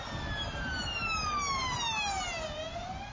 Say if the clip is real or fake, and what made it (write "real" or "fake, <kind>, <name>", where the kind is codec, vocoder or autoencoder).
real